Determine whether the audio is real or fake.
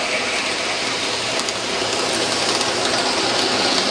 real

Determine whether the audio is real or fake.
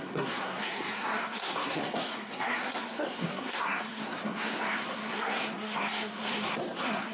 fake